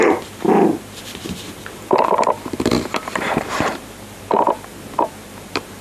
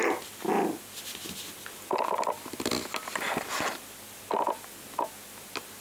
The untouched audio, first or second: second